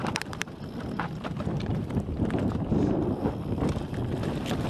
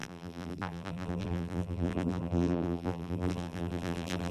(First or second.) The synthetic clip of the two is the second